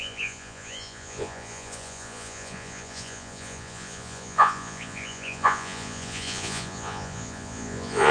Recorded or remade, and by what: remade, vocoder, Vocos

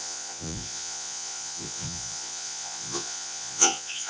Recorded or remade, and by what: remade, vocoder, Vocos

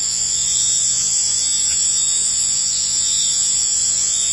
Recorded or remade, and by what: remade, vocoder, Vocos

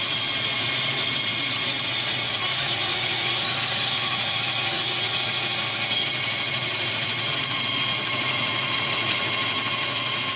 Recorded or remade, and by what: remade, vocoder, Vocos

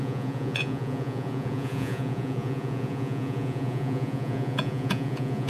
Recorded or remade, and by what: remade, vocoder, Vocos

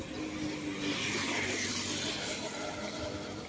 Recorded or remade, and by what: recorded